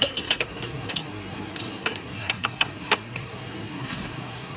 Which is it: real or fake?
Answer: fake